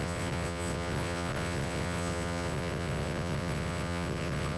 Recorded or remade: remade